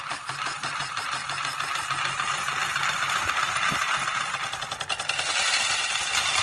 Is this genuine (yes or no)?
yes